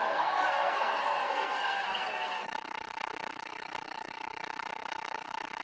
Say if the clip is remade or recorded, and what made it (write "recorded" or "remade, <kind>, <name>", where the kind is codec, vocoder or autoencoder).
remade, codec, SNAC